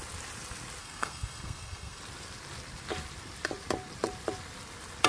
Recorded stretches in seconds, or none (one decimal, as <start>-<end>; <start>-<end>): 0.0-0.8; 2.0-5.1